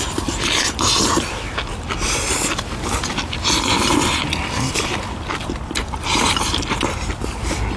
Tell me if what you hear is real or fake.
real